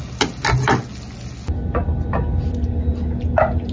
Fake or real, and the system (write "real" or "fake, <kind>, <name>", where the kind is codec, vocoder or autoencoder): real